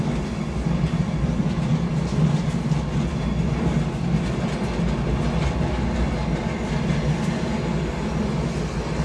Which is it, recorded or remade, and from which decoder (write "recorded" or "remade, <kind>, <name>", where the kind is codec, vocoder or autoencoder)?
recorded